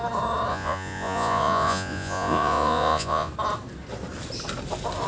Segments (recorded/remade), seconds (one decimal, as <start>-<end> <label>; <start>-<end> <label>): 0.0-0.5 recorded; 0.5-3.3 remade; 3.3-5.1 recorded